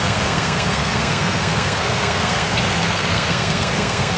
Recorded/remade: remade